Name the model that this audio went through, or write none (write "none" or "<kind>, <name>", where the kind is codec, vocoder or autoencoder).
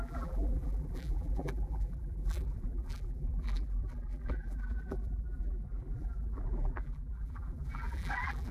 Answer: vocoder, BigVGAN v2